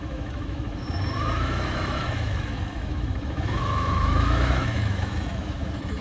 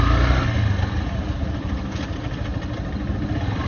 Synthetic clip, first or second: first